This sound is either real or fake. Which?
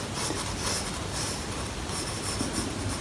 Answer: real